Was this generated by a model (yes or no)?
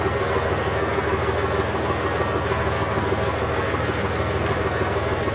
yes